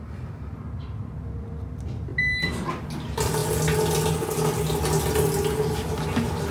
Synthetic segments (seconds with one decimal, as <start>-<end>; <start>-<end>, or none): none